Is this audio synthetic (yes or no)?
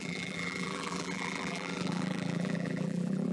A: yes